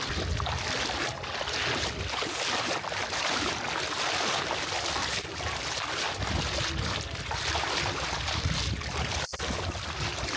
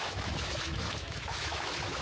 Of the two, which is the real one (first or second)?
first